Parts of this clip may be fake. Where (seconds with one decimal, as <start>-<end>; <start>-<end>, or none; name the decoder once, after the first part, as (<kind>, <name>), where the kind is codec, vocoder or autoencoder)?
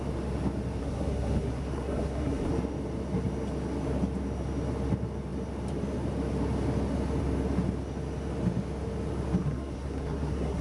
0.8-2.5 (codec, SNAC); 9.4-10.6